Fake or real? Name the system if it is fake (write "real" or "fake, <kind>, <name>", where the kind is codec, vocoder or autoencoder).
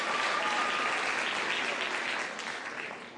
real